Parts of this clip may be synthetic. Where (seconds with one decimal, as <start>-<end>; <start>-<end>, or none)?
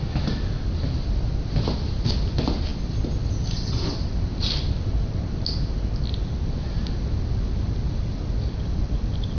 none